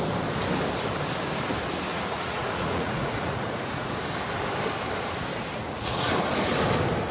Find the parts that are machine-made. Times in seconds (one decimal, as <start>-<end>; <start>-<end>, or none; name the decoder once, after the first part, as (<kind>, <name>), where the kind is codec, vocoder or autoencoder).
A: 1.9-3.9 (vocoder, Vocos); 5.5-6.1